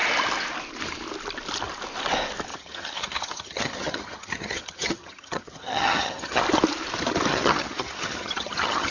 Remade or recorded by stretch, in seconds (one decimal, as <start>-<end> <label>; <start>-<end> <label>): 0.0-2.5 recorded; 2.5-6.4 remade; 6.4-7.3 recorded; 7.3-8.9 remade